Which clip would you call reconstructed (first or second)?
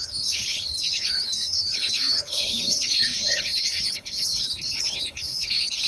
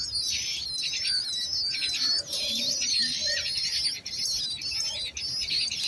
first